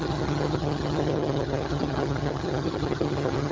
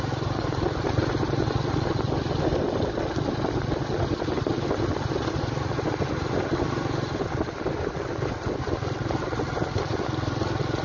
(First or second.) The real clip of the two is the second